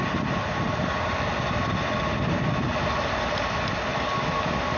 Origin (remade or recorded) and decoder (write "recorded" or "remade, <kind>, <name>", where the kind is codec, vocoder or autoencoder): recorded